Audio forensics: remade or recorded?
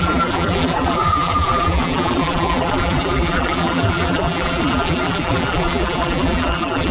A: remade